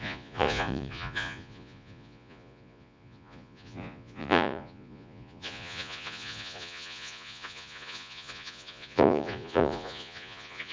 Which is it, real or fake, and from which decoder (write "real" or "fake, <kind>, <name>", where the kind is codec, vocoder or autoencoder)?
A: fake, vocoder, Vocos